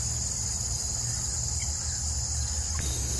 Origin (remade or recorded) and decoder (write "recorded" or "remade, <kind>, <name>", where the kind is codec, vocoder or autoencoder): recorded